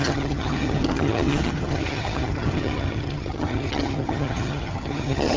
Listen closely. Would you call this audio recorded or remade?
remade